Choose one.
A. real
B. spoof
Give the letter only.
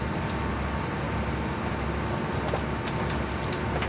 A